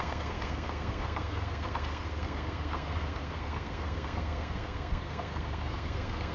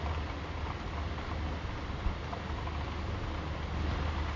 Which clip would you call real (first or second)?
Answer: second